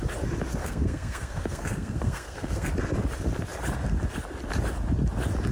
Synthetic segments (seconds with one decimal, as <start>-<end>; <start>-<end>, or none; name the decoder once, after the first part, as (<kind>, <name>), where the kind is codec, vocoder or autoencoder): 0.6-2.7 (codec, SNAC)